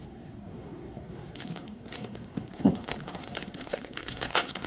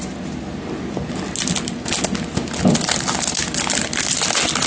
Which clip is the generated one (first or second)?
first